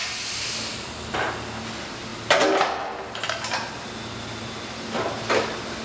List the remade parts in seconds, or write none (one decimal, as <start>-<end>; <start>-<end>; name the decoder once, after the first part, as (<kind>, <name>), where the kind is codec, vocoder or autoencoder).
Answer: none